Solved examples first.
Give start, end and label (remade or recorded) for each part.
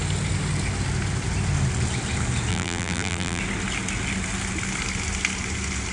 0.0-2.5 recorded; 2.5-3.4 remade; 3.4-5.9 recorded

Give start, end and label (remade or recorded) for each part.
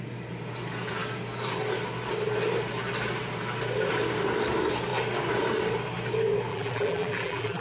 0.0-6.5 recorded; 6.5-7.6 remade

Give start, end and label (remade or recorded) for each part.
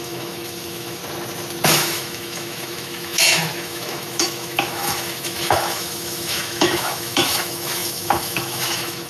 0.0-1.0 remade; 1.0-1.7 recorded; 1.7-9.1 remade